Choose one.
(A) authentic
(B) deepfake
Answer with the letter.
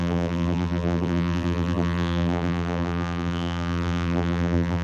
B